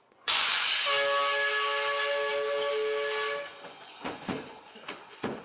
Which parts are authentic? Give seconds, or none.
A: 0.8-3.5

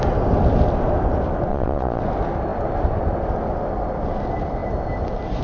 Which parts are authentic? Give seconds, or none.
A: 0.0-1.5; 2.0-5.4

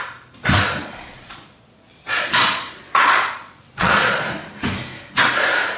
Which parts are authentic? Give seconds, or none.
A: 0.0-0.8; 4.3-5.8

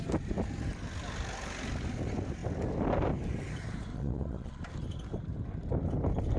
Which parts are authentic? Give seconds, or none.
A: 0.0-3.9; 4.7-6.4

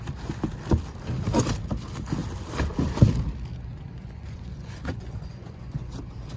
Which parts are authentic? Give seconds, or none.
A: 0.0-3.7; 5.9-6.4

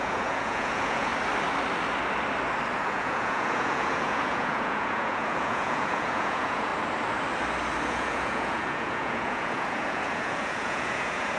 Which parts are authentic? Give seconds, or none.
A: 1.1-2.8; 6.7-7.8

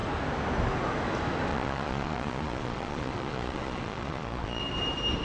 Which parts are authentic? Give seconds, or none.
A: 0.0-1.5; 4.6-5.2

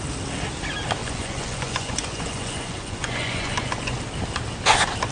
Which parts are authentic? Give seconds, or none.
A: 0.0-1.0; 4.0-5.1